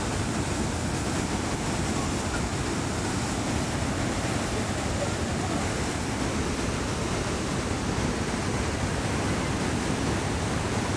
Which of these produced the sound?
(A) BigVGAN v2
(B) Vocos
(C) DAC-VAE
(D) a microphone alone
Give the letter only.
D